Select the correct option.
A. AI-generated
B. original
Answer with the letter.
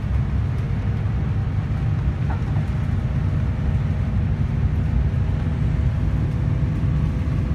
B